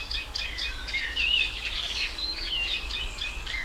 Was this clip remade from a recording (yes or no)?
yes